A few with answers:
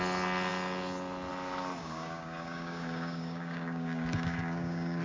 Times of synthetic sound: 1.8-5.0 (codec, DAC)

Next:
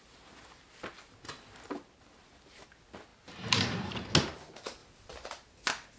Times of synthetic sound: none

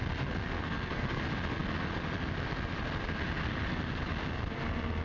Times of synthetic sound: 0.4-1.2 (codec, SNAC)

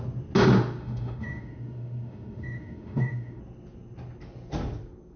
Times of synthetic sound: 0.8-3.4 (autoencoder, DAC-VAE)